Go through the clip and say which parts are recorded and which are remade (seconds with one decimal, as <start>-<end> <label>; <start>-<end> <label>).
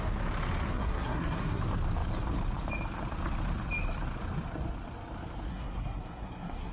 0.0-0.7 recorded; 0.7-1.6 remade; 1.6-5.5 recorded; 5.5-6.7 remade